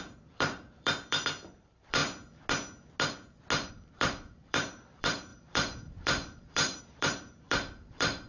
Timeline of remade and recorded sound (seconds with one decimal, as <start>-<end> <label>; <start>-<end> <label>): 0.0-2.0 remade; 2.0-3.7 recorded; 3.7-8.3 remade